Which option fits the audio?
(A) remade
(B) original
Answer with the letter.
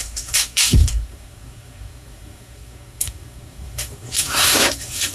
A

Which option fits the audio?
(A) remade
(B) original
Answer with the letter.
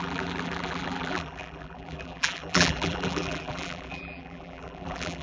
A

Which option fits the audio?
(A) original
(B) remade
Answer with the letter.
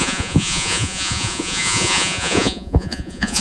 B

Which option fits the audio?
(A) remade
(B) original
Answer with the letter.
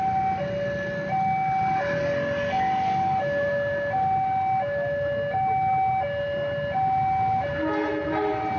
B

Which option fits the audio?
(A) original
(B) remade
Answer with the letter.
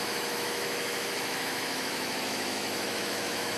B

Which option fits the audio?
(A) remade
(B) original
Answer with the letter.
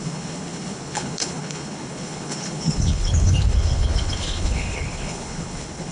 A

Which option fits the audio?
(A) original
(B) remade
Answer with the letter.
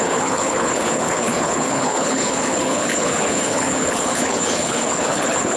B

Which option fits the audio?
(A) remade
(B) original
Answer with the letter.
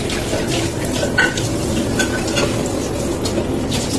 B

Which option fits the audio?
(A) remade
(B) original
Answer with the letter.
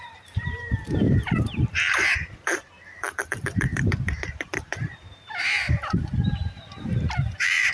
A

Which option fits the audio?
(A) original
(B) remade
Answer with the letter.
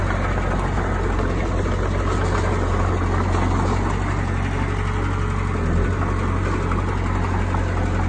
A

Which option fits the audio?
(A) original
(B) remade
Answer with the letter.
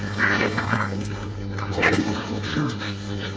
B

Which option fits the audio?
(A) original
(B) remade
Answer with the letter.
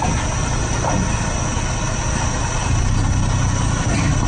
A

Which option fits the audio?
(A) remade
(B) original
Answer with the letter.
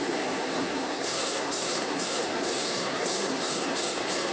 A